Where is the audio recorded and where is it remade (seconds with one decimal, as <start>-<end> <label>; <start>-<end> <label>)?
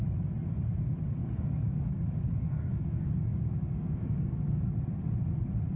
0.0-1.2 recorded; 1.2-4.7 remade; 4.7-5.8 recorded